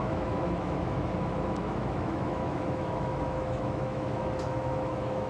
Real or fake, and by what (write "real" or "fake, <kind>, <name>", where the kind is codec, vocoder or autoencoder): fake, autoencoder, DAC-VAE